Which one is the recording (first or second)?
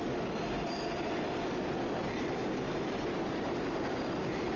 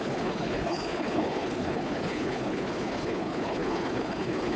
first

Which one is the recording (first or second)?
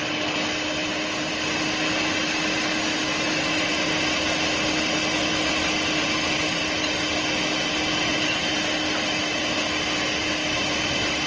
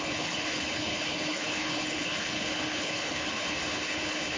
first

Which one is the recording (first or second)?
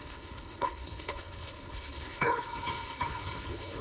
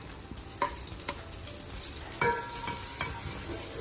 second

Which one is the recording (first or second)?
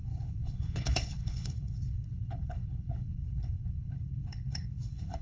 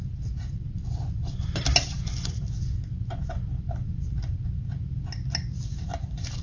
second